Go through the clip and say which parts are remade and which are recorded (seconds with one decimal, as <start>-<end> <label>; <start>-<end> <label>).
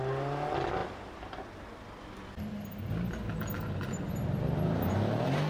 0.0-5.5 recorded